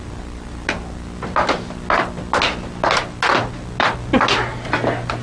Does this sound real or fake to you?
real